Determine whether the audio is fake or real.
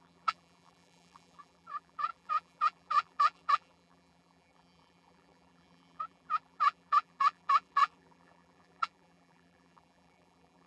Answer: fake